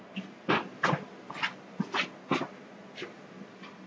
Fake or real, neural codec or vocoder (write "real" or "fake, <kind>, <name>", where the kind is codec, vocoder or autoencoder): real